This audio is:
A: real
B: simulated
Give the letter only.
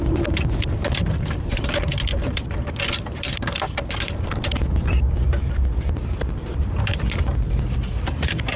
B